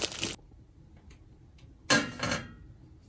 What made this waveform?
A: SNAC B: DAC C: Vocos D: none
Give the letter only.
D